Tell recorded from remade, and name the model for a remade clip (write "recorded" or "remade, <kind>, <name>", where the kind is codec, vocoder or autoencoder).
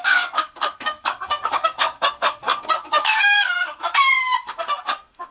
remade, codec, SNAC